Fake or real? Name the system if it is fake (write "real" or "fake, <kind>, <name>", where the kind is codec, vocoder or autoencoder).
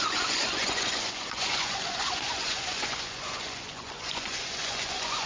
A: fake, vocoder, Vocos